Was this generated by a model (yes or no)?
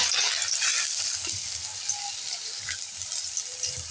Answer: no